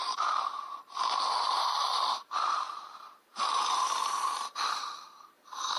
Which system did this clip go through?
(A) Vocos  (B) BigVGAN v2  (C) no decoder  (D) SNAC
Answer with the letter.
B